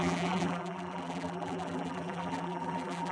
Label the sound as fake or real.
fake